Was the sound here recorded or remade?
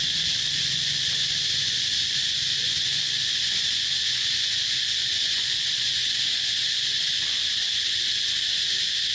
remade